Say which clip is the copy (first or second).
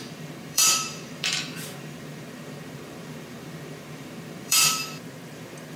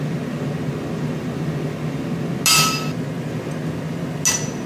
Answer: first